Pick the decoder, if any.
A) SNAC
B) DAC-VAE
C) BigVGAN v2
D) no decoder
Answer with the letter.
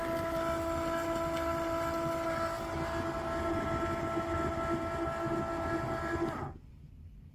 D